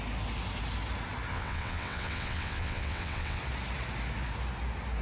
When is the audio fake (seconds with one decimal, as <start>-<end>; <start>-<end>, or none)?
1.3-3.4